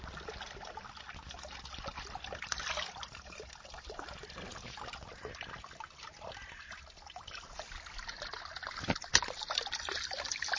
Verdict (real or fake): real